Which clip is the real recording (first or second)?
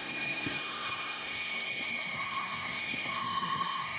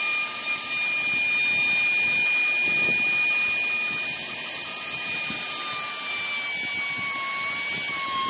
second